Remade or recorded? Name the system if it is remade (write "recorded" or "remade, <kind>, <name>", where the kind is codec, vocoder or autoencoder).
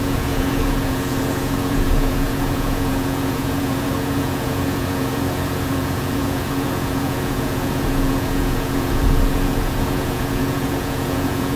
remade, vocoder, Vocos